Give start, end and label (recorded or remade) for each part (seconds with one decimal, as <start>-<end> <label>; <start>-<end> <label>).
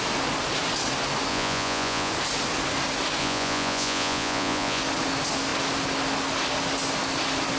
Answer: 0.0-1.3 recorded; 1.3-2.1 remade; 2.1-3.2 recorded; 3.2-4.8 remade; 4.8-7.6 recorded